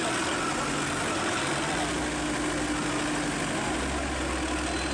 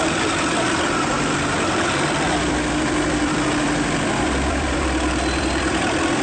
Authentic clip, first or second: first